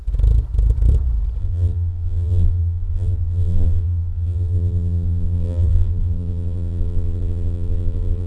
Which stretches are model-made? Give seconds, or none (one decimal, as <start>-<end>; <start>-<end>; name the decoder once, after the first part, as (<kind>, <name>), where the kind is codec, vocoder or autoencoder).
1.4-8.3 (vocoder, BigVGAN v2)